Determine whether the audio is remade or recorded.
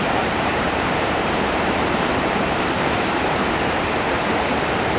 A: remade